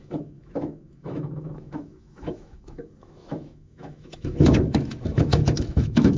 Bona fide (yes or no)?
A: no